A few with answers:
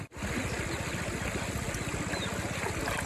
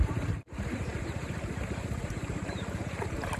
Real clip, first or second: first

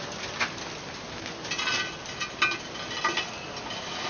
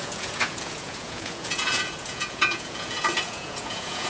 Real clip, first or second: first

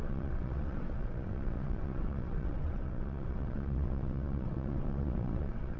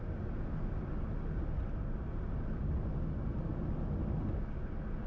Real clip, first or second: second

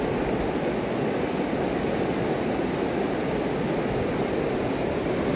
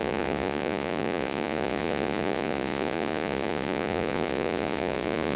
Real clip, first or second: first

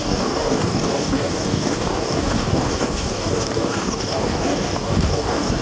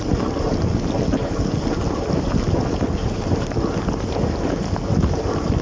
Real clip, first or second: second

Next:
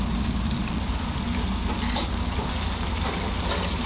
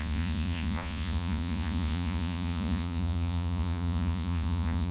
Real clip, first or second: first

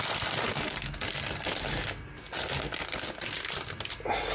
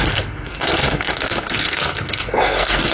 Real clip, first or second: first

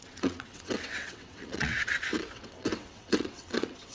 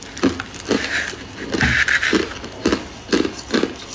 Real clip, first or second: second